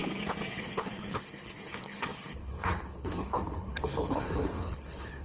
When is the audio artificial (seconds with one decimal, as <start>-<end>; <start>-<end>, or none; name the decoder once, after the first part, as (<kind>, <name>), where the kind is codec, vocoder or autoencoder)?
0.6-5.2 (codec, HILCodec)